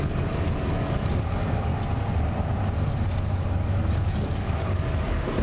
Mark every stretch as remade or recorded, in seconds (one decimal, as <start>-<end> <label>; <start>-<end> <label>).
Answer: 0.0-1.7 remade; 1.7-3.3 recorded; 3.3-5.4 remade